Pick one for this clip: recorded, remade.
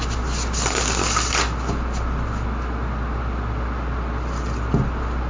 recorded